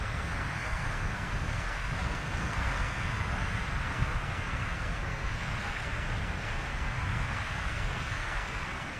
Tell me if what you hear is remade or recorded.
remade